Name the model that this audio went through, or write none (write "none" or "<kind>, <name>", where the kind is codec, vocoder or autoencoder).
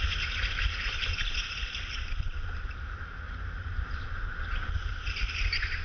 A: none